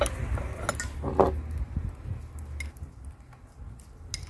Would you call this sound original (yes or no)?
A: yes